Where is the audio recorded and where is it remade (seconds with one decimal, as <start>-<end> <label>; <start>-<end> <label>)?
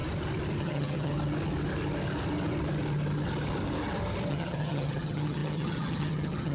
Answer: 0.0-0.6 recorded; 0.6-1.1 remade; 1.1-4.3 recorded; 4.3-6.5 remade